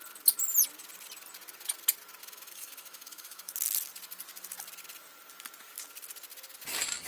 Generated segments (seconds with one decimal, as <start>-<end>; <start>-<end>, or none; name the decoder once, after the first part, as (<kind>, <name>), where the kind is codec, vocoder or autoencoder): 2.2-3.5 (autoencoder, DAC-VAE)